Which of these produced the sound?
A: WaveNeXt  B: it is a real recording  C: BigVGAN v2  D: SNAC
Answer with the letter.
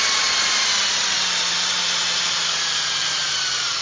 B